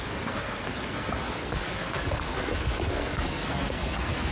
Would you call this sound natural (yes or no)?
no